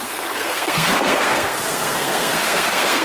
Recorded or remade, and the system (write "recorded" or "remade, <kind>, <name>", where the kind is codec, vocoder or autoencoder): remade, codec, SNAC